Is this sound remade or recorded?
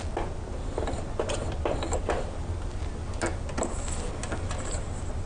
recorded